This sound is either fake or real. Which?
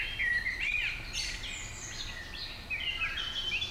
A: real